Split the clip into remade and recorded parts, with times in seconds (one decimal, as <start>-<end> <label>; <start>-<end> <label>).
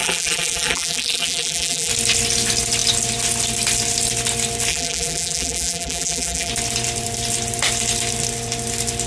0.0-1.9 remade; 1.9-4.7 recorded; 4.7-6.5 remade; 6.5-9.1 recorded